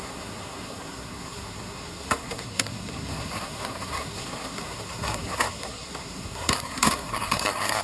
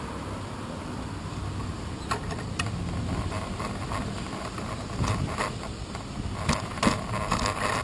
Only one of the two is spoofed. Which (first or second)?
first